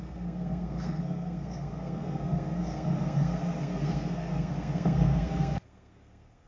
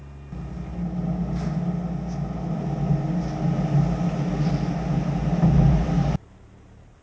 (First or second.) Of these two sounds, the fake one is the first